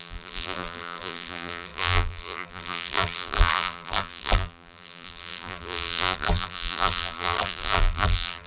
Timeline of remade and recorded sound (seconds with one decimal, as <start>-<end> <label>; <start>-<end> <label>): 0.0-8.5 remade